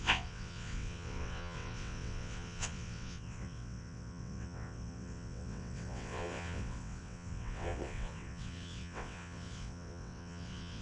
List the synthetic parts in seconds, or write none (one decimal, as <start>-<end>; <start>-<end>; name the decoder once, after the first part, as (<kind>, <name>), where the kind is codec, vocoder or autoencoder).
0.0-10.8 (vocoder, WaveNeXt)

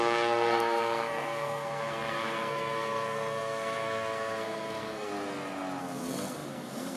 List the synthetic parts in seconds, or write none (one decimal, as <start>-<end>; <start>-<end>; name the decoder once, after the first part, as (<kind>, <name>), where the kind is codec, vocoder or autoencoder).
0.0-5.1 (codec, SNAC); 5.8-7.0

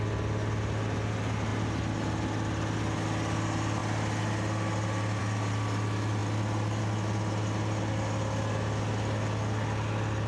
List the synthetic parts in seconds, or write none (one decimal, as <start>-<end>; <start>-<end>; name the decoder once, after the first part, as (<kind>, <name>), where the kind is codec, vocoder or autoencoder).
none

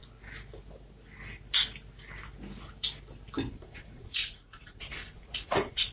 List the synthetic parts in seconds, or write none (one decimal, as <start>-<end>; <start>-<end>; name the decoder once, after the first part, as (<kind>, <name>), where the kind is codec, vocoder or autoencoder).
3.5-5.9 (vocoder, Vocos)

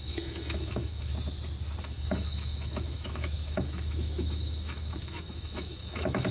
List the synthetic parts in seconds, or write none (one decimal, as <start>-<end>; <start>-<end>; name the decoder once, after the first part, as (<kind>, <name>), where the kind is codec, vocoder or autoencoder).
0.0-1.1 (autoencoder, DAC-VAE); 1.8-6.3